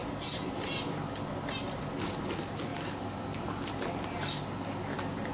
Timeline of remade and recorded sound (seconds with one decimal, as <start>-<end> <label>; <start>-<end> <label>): 0.0-5.3 recorded